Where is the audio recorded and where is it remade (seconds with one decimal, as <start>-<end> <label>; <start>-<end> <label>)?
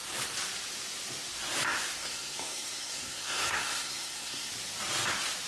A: 0.0-2.0 recorded; 2.0-4.5 remade; 4.5-5.5 recorded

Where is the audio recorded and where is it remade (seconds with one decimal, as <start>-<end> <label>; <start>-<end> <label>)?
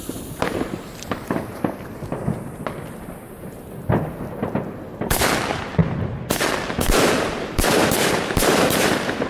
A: 0.0-5.8 remade; 5.8-6.8 recorded; 6.8-9.3 remade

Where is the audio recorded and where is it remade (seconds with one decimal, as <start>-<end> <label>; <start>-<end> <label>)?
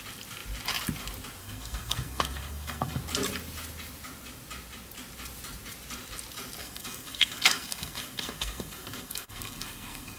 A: 0.0-1.4 recorded; 1.4-3.0 remade; 3.0-6.6 recorded; 6.6-10.2 remade